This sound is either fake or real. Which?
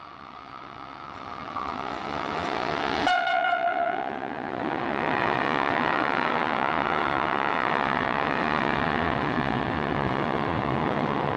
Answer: fake